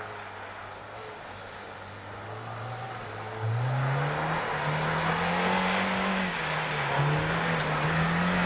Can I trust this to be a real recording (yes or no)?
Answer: yes